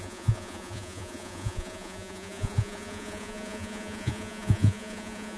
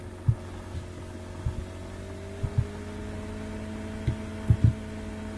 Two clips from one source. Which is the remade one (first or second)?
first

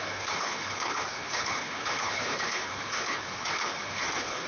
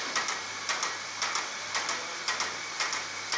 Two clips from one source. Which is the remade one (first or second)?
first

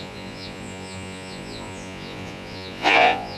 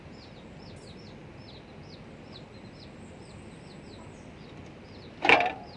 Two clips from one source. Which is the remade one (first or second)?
first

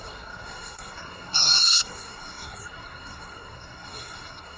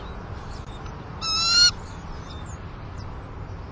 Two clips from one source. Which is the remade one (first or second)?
first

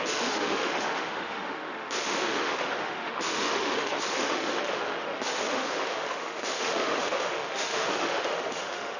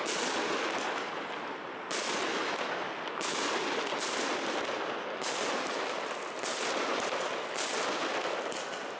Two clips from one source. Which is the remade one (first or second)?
first